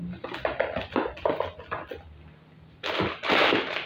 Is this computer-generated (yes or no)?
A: no